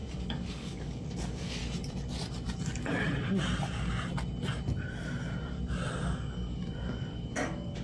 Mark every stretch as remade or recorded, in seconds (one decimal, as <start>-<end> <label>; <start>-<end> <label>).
0.0-0.5 recorded; 0.5-1.6 remade; 1.6-6.0 recorded; 6.0-7.8 remade